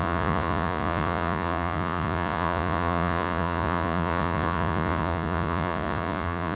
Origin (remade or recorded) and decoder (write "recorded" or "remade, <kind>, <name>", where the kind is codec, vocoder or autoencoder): remade, vocoder, Vocos